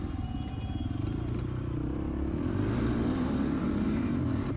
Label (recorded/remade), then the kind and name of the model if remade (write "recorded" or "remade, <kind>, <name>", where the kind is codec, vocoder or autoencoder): recorded